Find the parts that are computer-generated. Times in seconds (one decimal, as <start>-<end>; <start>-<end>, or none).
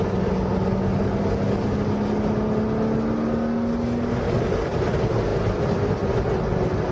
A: none